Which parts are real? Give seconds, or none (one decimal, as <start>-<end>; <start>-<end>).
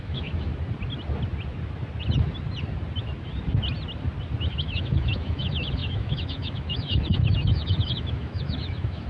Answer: 0.5-4.5